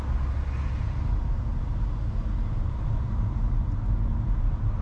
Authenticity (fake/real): real